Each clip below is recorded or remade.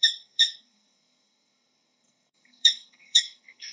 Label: remade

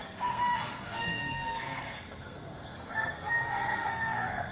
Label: remade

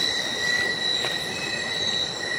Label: recorded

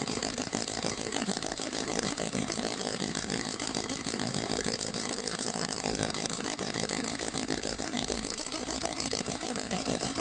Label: remade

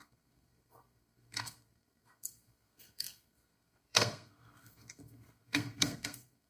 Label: remade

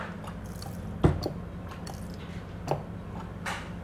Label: recorded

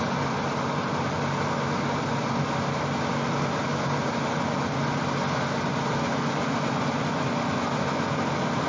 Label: recorded